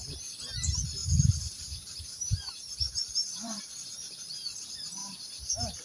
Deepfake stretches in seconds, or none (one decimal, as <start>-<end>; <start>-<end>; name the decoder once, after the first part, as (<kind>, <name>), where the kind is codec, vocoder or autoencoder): 1.0-3.6 (vocoder, BigVGAN v2); 5.0-5.8